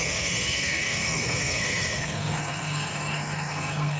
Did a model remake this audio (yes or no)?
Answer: yes